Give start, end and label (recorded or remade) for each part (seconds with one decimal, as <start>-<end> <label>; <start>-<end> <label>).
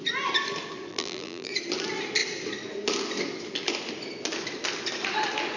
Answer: 0.0-0.9 recorded; 0.9-1.5 remade; 1.5-5.6 recorded